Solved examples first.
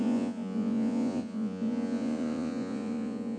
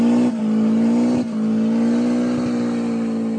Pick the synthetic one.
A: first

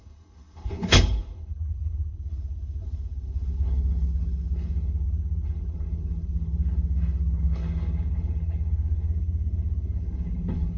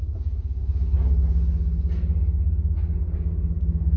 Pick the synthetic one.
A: first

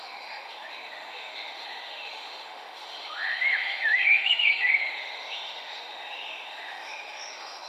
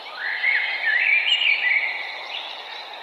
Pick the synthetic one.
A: first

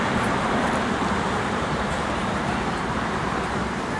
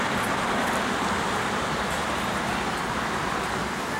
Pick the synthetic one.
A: first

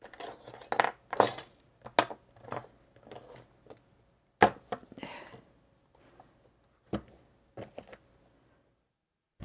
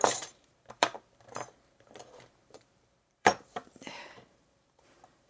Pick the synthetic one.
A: second